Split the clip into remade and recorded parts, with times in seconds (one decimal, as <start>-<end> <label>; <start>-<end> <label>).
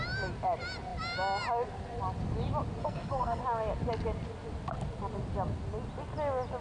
0.0-2.8 recorded; 2.8-3.4 remade; 3.4-6.6 recorded